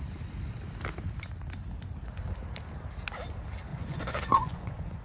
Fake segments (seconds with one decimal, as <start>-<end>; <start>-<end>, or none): 3.7-5.0